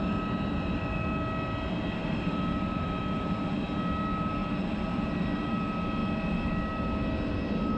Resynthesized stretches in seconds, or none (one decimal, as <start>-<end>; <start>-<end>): 2.0-3.0; 4.4-5.5